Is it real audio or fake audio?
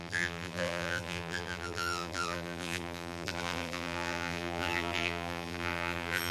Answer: fake